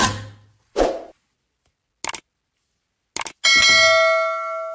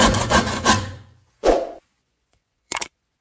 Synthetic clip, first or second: second